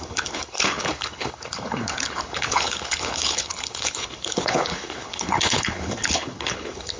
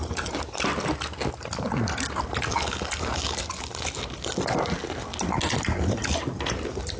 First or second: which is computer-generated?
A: first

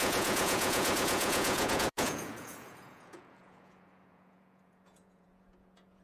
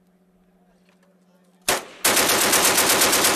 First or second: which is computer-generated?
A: first